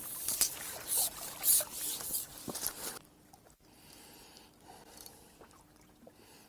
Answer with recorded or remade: recorded